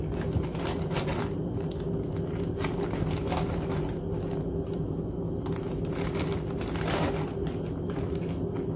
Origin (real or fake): real